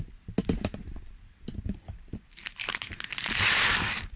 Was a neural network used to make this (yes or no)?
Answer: no